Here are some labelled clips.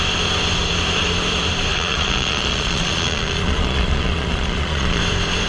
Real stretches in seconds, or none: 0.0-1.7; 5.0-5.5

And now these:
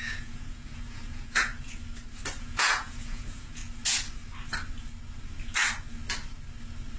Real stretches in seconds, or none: 1.5-2.4; 3.6-7.0